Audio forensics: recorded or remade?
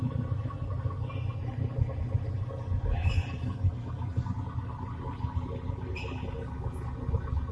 recorded